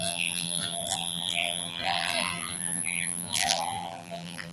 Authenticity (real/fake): fake